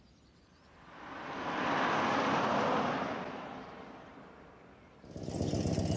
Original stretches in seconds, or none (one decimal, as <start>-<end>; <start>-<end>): 0.0-6.0